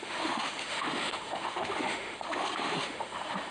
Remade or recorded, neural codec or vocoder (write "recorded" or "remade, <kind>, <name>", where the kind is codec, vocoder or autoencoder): remade, autoencoder, DAC-VAE